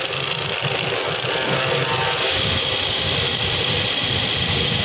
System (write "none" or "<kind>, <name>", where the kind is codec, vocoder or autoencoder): vocoder, BigVGAN v2